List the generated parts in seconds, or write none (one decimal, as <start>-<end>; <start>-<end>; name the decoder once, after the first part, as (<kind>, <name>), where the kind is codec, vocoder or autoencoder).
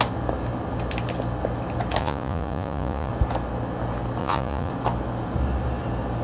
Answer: 2.0-3.1 (vocoder, Vocos); 4.2-4.7